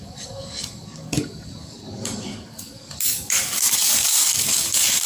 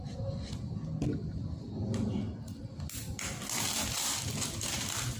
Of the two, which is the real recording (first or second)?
second